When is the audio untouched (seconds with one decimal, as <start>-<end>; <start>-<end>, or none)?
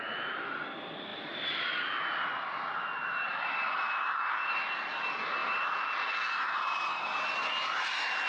0.0-1.1; 1.6-3.3; 3.8-8.3